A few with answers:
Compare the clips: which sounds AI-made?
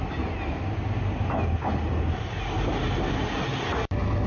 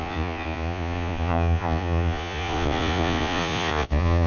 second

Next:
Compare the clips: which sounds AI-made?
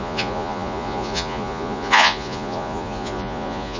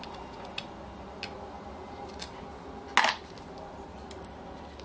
first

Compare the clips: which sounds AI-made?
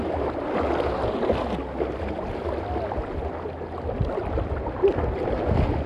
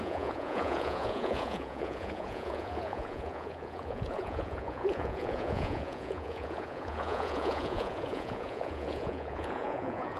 second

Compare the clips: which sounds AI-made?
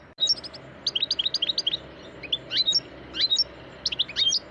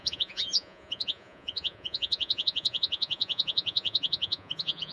second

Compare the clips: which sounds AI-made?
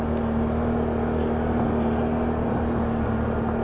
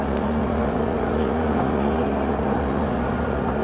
second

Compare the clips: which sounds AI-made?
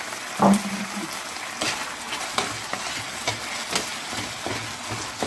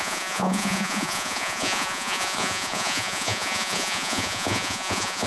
second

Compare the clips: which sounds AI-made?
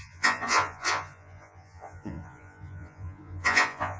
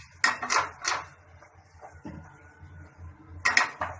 first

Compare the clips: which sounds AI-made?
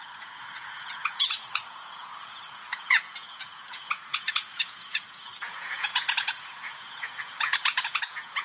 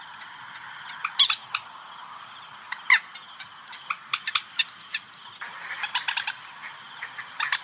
first